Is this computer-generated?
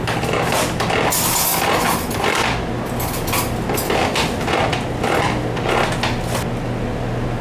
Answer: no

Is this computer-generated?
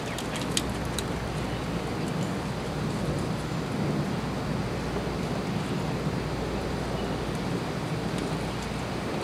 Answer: no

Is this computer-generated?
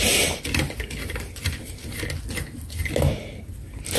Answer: no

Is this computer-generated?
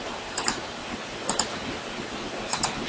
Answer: no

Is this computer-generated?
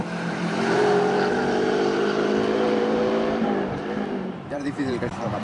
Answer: yes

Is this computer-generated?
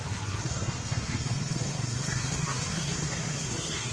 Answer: yes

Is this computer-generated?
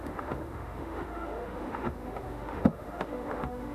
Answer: yes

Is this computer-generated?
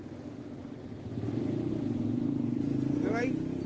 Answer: no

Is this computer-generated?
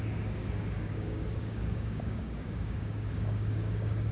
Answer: yes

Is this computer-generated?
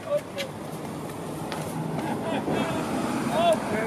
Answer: no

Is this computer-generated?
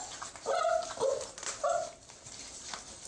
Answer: no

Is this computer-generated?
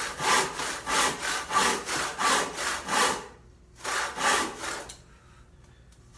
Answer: no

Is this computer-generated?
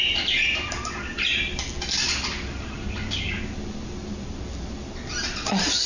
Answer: no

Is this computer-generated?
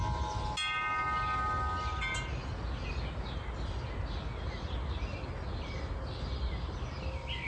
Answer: no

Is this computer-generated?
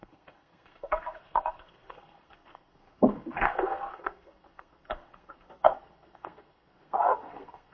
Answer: yes